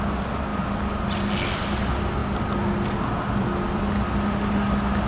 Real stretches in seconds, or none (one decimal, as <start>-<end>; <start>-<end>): 0.0-5.1